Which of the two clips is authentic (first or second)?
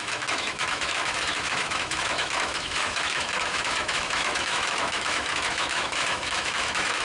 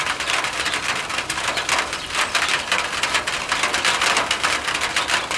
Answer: second